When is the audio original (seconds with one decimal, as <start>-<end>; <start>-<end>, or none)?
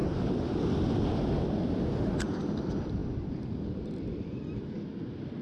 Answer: 0.0-5.4